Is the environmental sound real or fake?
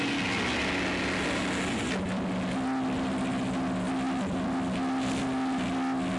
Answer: real